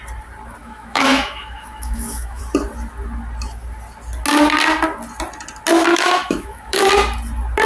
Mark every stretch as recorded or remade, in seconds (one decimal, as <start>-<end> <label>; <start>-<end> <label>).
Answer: 0.0-0.6 recorded; 0.6-2.4 remade; 2.4-5.9 recorded; 5.9-6.9 remade; 6.9-7.7 recorded